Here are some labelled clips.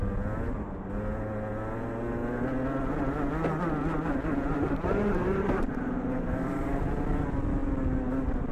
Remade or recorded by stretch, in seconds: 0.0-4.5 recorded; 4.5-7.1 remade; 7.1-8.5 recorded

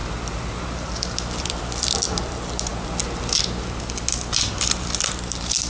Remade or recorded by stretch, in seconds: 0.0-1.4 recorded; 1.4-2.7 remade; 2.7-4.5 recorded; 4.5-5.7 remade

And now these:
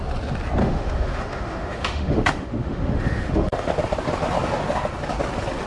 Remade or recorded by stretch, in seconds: 0.0-0.6 recorded; 0.6-3.7 remade; 3.7-5.7 recorded

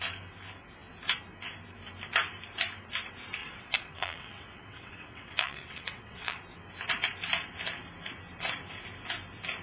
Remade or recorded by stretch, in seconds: 0.0-3.4 recorded; 3.4-6.4 remade; 6.4-9.6 recorded

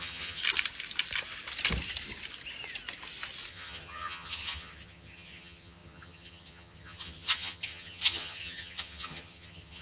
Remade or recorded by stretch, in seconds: 0.0-0.4 remade; 0.4-3.5 recorded; 3.5-9.8 remade

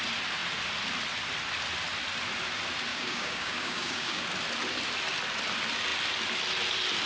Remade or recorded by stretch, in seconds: 0.0-2.9 recorded; 2.9-4.2 remade; 4.2-7.1 recorded

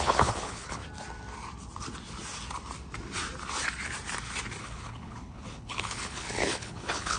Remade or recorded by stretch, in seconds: 0.0-0.8 remade; 0.8-4.6 recorded; 4.6-7.2 remade